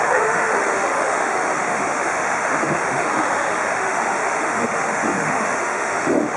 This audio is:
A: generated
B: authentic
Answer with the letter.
A